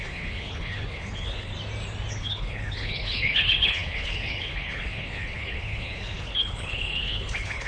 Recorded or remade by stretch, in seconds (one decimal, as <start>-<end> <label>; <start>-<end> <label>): 0.0-1.5 remade; 1.5-2.1 recorded; 2.1-7.7 remade

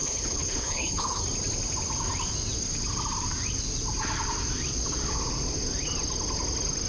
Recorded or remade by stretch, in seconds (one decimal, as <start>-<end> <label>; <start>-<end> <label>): 0.0-1.2 remade; 1.2-6.9 recorded

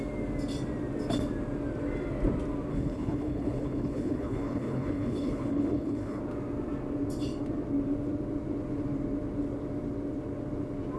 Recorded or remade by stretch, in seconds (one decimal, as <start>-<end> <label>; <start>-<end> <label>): 0.0-2.7 recorded; 2.7-6.2 remade; 6.2-11.0 recorded

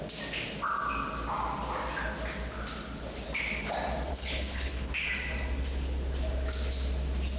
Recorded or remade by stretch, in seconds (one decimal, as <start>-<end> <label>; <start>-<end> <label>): 0.0-4.1 recorded; 4.1-4.9 remade; 4.9-7.4 recorded

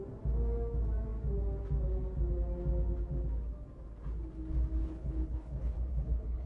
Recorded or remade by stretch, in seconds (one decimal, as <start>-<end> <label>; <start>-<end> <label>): 0.0-4.8 recorded; 4.8-6.5 remade

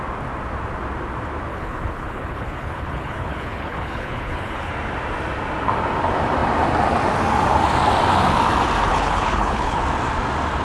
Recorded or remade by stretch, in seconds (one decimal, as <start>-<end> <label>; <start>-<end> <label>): 0.0-1.5 recorded; 1.5-4.7 remade; 4.7-8.9 recorded; 8.9-9.8 remade; 9.8-10.6 recorded

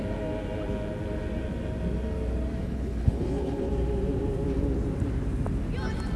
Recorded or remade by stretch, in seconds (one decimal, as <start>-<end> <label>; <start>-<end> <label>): 0.0-2.6 recorded; 2.6-3.7 remade; 3.7-6.2 recorded

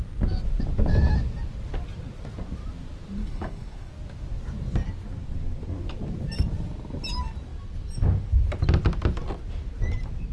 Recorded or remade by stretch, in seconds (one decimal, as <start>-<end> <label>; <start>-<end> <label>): 0.0-3.2 recorded; 3.2-3.9 remade; 3.9-10.3 recorded